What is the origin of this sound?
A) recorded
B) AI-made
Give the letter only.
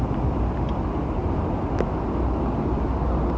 A